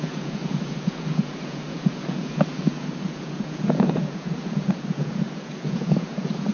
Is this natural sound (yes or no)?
no